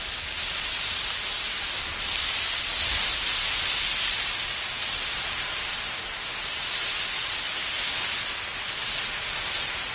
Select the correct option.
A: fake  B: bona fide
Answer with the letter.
B